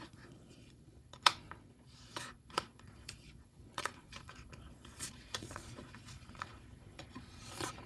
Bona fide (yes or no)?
no